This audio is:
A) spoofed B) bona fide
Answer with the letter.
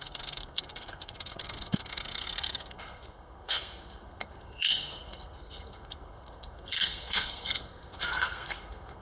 A